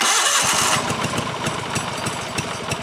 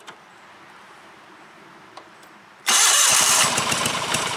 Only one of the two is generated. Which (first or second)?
second